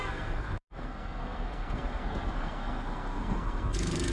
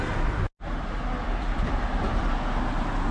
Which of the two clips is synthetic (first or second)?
first